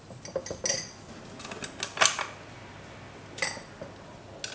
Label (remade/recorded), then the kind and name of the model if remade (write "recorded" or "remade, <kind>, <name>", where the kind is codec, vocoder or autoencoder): recorded